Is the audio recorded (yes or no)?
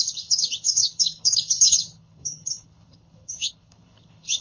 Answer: no